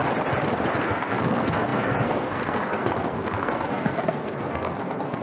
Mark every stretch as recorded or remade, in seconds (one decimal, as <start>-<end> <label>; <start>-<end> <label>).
0.0-0.8 recorded; 0.8-5.2 remade